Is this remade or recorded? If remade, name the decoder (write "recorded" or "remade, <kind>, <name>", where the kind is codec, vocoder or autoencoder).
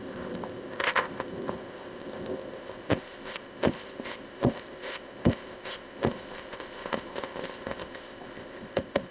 remade, codec, ZipCodec